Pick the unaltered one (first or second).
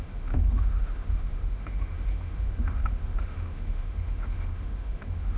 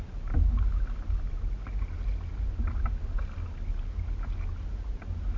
second